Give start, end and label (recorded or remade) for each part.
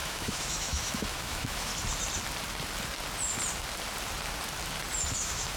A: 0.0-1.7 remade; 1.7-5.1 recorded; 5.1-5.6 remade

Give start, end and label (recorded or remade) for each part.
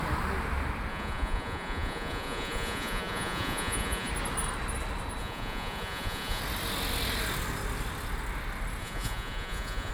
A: 0.0-0.9 recorded; 0.9-4.1 remade; 4.1-5.2 recorded; 5.2-6.4 remade; 6.4-8.8 recorded; 8.8-9.9 remade